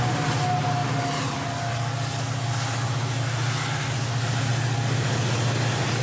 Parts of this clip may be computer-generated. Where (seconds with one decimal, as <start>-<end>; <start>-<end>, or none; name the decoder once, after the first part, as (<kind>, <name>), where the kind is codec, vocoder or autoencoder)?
none